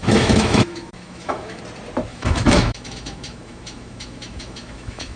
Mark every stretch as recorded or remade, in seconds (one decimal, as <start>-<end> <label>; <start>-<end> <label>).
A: 0.0-1.6 remade; 1.6-2.1 recorded; 2.1-5.2 remade